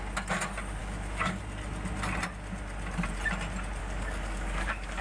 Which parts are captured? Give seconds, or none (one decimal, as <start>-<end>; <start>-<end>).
0.0-0.8; 1.4-3.8

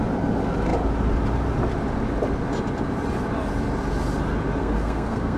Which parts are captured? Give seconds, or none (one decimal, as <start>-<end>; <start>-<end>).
0.0-4.6

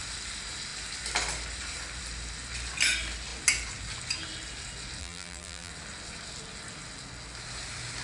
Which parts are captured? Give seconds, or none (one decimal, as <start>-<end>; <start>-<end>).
0.0-5.0; 5.7-8.0